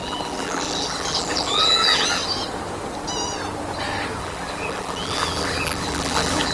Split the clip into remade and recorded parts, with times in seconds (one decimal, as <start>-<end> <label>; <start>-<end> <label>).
0.0-2.2 remade; 2.2-4.2 recorded; 4.2-6.5 remade